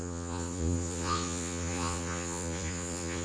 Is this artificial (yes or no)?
yes